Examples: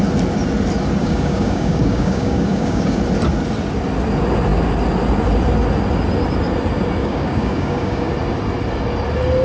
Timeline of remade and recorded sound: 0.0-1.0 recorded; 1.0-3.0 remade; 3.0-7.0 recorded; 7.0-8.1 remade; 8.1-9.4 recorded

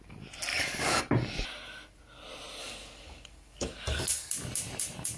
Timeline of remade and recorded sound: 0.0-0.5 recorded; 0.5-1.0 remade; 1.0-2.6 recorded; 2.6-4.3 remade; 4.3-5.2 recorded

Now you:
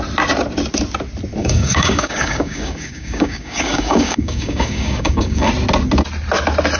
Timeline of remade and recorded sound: 0.0-1.4 recorded; 1.4-5.5 remade; 5.5-6.8 recorded